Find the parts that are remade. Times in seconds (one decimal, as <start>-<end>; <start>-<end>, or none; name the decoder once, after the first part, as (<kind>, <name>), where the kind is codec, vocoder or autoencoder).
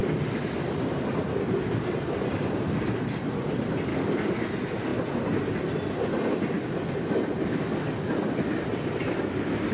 3.9-4.4 (codec, DAC)